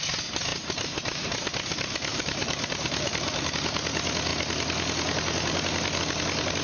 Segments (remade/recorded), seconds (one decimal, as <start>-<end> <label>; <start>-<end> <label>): 0.0-0.5 recorded; 0.5-1.4 remade; 1.4-2.1 recorded; 2.1-3.5 remade; 3.5-6.6 recorded